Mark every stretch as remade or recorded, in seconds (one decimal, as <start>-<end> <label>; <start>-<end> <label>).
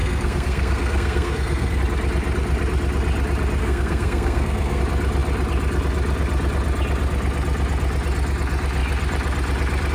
0.0-1.8 remade; 1.8-3.6 recorded; 3.6-4.8 remade; 4.8-9.9 recorded